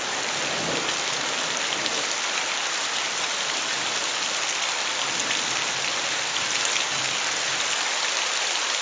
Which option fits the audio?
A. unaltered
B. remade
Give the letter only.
A